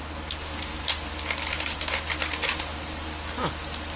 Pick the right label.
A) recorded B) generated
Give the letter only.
A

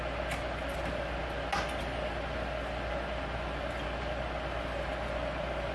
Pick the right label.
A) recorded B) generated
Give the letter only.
A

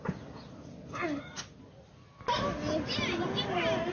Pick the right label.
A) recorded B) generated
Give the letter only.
A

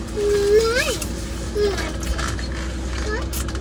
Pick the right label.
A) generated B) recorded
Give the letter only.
B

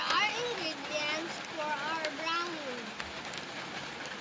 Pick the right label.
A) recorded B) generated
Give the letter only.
A